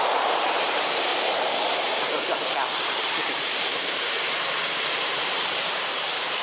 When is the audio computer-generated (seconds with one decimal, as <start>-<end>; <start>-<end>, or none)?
0.0-1.1; 2.8-6.4